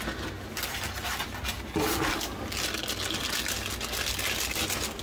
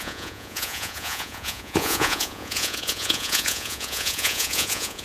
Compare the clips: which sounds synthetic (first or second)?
second